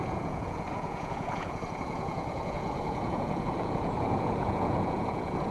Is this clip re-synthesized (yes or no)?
yes